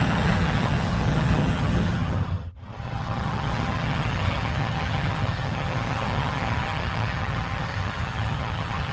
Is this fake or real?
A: fake